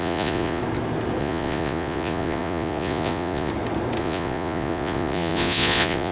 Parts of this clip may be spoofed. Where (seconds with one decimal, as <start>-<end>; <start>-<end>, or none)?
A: 0.0-0.6; 1.2-3.5; 4.0-6.1